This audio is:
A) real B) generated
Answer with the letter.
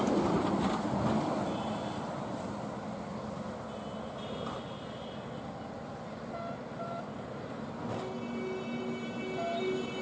A